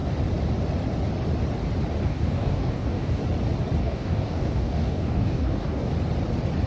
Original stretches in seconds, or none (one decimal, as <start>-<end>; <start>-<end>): 0.0-2.0; 3.2-3.8; 5.9-6.7